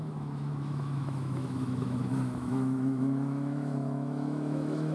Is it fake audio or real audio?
fake